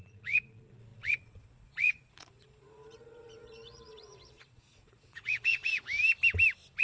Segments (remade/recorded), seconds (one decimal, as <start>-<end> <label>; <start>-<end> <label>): 0.0-5.6 remade; 5.6-6.8 recorded